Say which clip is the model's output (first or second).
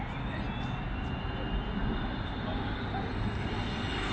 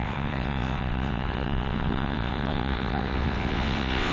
second